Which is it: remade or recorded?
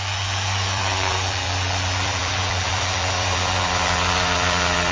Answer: remade